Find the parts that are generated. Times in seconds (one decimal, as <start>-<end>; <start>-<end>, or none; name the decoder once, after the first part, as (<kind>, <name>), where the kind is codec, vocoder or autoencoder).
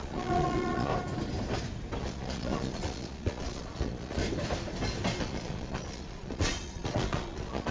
0.0-0.9 (vocoder, Vocos); 2.0-4.2; 5.2-7.7